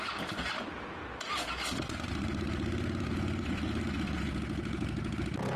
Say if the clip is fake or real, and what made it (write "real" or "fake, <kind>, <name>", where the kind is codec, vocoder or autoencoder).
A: real